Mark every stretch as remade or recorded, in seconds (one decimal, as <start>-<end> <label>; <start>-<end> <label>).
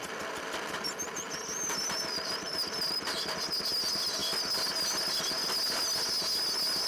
0.0-6.9 recorded